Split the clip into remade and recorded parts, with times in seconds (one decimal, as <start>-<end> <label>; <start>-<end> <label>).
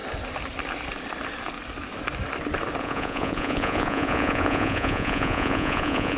0.0-2.8 recorded; 2.8-6.2 remade